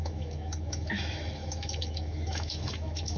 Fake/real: fake